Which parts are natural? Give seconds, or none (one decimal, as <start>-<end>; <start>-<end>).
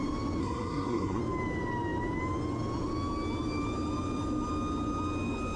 0.0-0.4; 1.2-5.6